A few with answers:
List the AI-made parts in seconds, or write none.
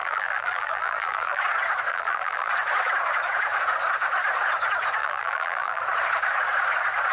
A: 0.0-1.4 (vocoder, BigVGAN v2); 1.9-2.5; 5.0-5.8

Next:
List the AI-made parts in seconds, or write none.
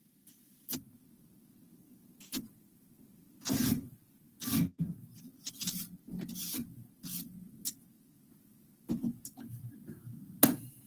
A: none